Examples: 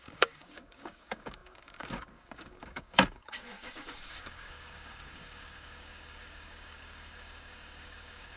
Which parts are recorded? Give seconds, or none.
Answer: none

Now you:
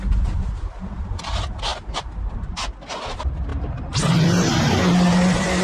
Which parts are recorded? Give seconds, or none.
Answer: 0.0-5.6

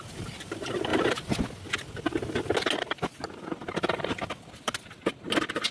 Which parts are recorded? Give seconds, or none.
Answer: 0.0-3.6; 4.5-5.7

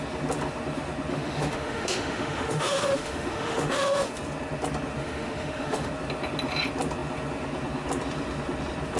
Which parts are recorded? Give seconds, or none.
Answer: 0.0-1.1; 4.1-5.0; 5.9-9.0

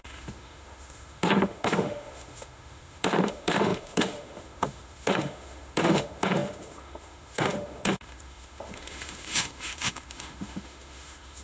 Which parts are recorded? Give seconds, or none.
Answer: none